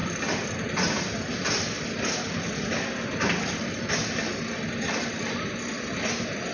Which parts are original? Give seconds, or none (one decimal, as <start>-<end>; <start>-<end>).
0.0-6.5